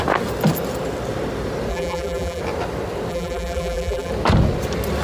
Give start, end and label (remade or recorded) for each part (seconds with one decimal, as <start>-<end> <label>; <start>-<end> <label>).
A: 0.0-1.7 recorded; 1.7-2.4 remade; 2.4-3.1 recorded; 3.1-4.1 remade; 4.1-5.0 recorded